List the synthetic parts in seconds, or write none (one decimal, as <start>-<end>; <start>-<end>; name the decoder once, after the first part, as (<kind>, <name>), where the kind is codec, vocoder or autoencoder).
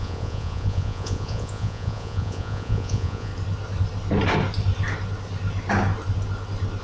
0.0-3.3 (vocoder, Vocos)